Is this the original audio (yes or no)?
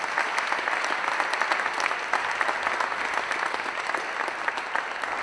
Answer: yes